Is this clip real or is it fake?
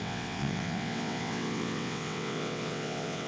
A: fake